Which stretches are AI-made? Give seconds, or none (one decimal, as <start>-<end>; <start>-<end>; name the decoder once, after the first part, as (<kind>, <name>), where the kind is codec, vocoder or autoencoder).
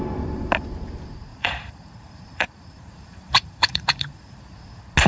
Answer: 1.3-4.4 (vocoder, BigVGAN v2)